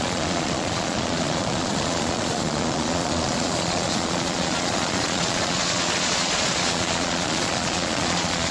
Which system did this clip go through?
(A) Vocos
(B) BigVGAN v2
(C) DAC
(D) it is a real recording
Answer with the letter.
A